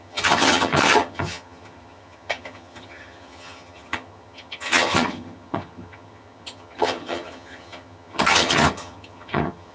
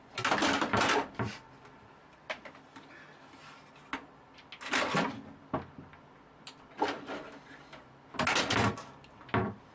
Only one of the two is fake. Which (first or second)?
first